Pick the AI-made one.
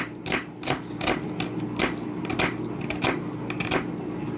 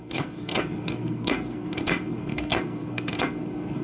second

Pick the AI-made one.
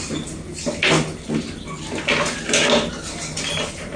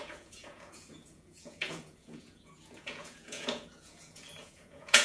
second